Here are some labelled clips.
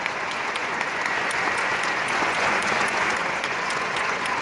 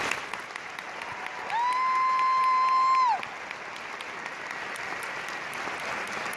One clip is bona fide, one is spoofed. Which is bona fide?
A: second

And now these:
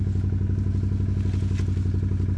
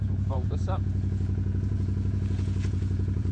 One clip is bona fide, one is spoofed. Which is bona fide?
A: first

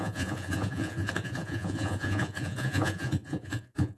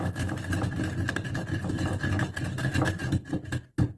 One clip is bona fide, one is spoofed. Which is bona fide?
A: second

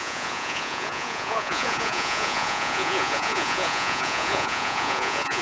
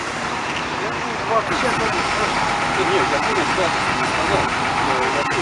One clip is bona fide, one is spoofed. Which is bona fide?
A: second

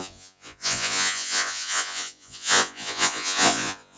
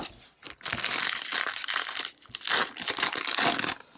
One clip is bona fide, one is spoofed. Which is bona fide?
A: second